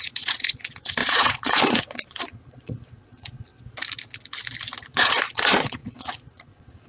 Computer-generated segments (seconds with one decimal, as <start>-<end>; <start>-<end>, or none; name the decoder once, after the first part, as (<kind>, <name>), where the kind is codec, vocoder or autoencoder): 0.0-3.5 (vocoder, Vocos); 4.8-6.9